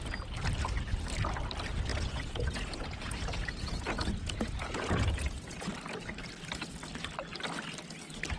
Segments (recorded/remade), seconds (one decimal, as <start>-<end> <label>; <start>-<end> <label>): 0.0-1.9 recorded; 1.9-5.7 remade; 5.7-8.4 recorded